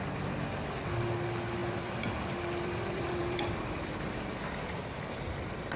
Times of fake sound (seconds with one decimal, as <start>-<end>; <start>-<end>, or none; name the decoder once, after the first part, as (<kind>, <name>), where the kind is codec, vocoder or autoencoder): 1.6-5.1 (vocoder, BigVGAN v2)